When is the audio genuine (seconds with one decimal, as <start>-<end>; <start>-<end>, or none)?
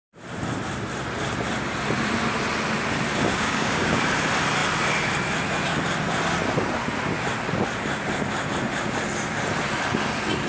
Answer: 0.0-3.3; 4.0-10.5